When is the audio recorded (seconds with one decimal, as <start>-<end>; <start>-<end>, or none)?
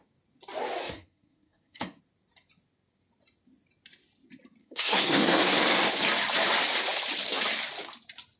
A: 0.0-0.8; 2.0-4.6; 5.9-8.4